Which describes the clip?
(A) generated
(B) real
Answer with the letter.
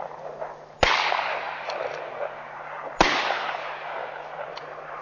B